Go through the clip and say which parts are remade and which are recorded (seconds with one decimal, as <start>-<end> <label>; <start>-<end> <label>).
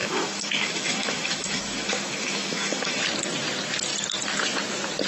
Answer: 0.0-3.0 remade; 3.0-5.1 recorded